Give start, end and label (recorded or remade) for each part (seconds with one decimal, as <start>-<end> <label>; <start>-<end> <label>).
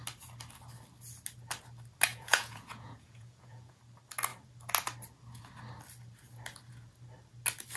0.0-2.1 recorded; 2.1-3.8 remade; 3.8-7.8 recorded